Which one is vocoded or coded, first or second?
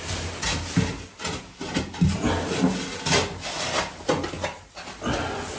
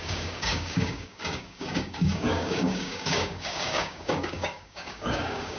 second